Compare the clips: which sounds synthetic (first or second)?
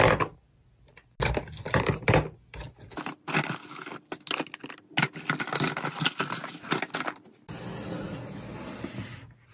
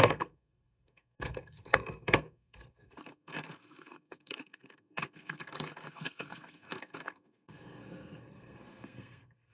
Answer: second